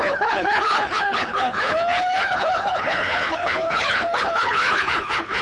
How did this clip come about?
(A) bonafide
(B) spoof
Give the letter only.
B